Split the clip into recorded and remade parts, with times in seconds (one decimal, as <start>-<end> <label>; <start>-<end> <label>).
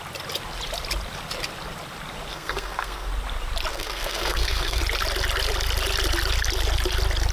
0.0-2.3 recorded; 2.3-3.1 remade; 3.1-3.7 recorded; 3.7-4.8 remade; 4.8-7.3 recorded